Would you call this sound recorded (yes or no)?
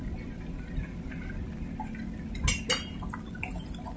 yes